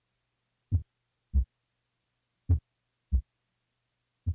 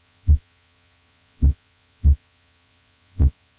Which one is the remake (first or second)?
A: second